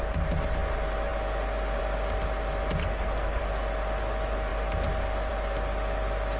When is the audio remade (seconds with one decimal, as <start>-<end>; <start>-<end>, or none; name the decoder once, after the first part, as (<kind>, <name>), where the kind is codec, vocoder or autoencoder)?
2.8-3.4 (codec, SNAC)